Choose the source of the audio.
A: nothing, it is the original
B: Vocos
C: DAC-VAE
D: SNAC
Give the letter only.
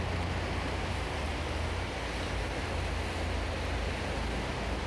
A